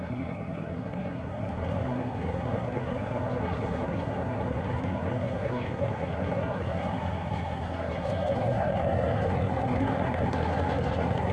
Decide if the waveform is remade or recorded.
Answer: remade